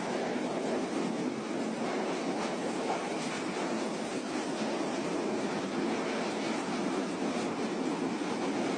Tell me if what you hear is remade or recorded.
recorded